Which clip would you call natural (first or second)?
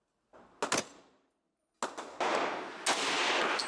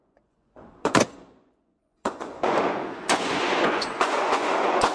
first